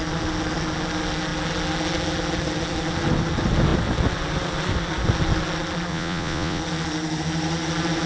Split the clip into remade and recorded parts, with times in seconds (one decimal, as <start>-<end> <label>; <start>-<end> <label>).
0.0-5.9 recorded; 5.9-6.6 remade; 6.6-8.1 recorded